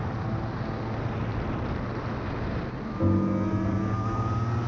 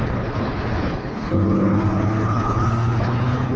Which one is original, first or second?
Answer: first